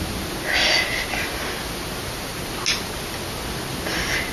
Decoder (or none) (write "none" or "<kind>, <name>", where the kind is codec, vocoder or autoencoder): none